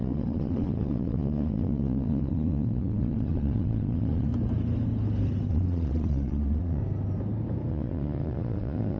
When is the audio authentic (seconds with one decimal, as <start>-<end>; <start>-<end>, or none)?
4.3-5.5; 6.8-7.7